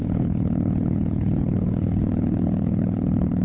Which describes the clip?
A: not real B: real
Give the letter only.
A